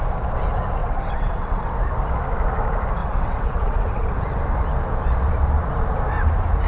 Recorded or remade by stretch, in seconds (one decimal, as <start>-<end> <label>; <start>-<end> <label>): 0.0-0.8 recorded; 0.8-1.7 remade; 1.7-3.0 recorded; 3.0-4.1 remade; 4.1-6.7 recorded